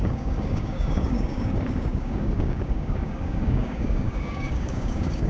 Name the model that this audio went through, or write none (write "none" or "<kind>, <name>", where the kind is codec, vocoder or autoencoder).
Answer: codec, DAC